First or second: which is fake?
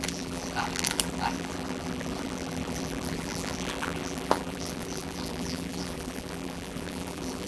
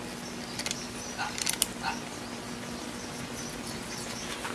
first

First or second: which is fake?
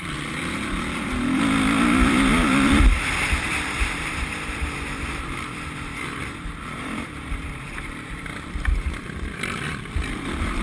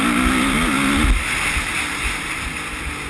first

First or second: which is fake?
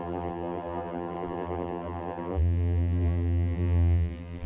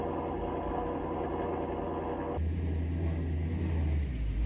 first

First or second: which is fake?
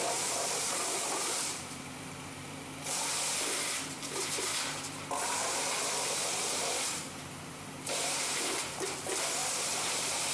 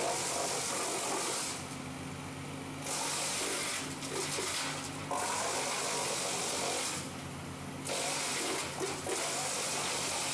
first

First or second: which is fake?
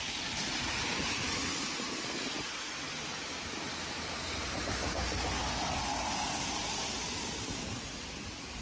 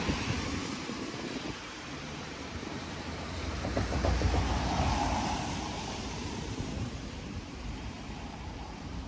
second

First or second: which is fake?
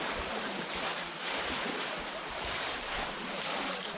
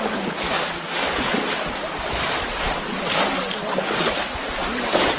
first